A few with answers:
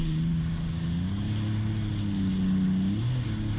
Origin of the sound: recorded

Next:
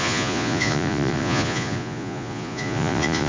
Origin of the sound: remade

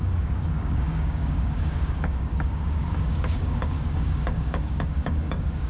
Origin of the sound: remade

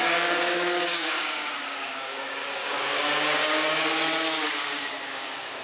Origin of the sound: remade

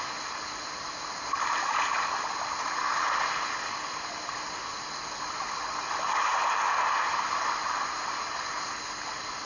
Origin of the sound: recorded